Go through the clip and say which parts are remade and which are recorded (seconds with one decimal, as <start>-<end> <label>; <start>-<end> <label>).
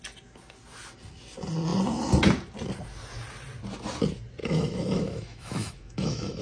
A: 0.0-4.4 recorded; 4.4-6.4 remade